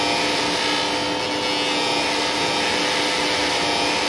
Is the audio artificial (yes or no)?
no